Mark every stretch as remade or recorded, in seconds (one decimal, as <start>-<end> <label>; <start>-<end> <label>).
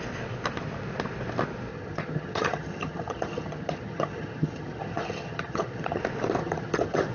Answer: 0.0-1.7 recorded; 1.7-6.0 remade; 6.0-6.4 recorded; 6.4-7.1 remade